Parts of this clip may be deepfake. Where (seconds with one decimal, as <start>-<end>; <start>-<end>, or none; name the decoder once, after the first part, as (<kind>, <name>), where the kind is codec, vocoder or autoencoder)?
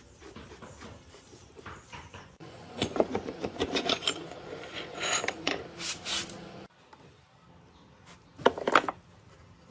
1.9-5.6 (vocoder, Vocos)